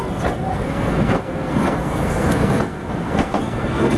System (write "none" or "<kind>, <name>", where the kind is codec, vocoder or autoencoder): codec, SNAC